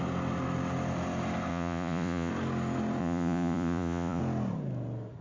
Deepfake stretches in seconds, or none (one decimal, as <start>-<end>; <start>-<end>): 1.5-2.3; 3.0-4.2